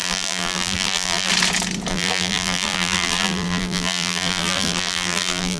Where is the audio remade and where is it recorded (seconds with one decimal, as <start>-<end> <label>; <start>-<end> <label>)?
0.0-1.3 remade; 1.3-1.9 recorded; 1.9-5.6 remade